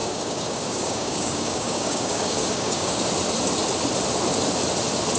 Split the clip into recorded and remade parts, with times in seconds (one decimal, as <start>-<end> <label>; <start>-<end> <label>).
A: 0.0-3.1 remade; 3.1-5.2 recorded